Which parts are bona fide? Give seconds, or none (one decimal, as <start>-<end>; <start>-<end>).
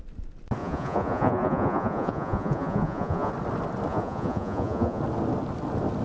0.0-0.6; 3.3-3.9; 5.0-6.0